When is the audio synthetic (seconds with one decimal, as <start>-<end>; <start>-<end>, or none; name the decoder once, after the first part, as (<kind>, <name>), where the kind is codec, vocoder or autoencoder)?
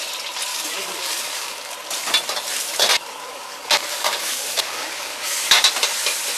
0.5-1.7 (codec, DAC); 3.0-5.5